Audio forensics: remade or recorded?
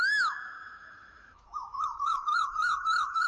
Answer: remade